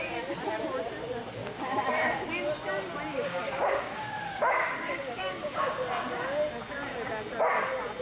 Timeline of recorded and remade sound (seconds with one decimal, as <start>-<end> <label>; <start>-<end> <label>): 0.0-1.4 recorded; 1.4-2.3 remade; 2.3-3.1 recorded; 3.1-5.7 remade; 5.7-8.0 recorded